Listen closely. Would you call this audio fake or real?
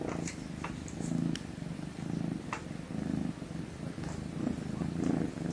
real